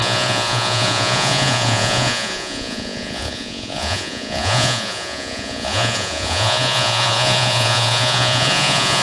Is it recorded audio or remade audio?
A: remade